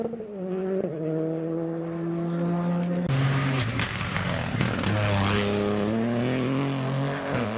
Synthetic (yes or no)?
no